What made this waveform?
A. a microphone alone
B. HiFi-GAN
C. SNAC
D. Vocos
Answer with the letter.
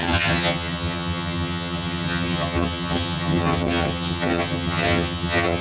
B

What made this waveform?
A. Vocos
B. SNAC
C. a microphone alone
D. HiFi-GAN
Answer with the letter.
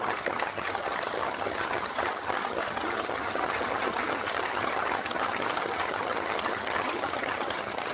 D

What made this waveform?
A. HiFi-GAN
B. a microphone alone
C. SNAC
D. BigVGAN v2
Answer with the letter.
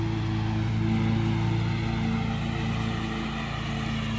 B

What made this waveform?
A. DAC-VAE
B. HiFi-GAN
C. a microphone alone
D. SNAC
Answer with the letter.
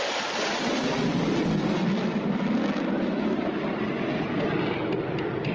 C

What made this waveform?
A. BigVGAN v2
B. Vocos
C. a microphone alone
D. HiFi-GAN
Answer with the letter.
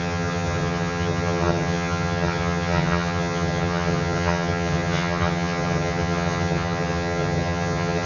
D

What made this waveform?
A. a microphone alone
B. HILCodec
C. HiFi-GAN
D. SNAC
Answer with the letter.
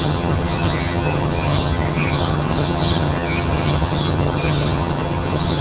C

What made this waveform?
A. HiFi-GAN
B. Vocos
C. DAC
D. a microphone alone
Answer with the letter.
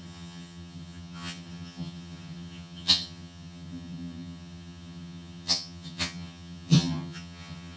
A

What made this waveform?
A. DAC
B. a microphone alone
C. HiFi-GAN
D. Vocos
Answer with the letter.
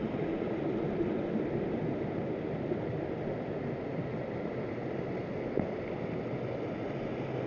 B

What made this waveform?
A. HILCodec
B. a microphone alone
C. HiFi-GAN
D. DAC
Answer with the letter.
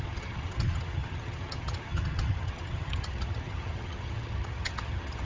C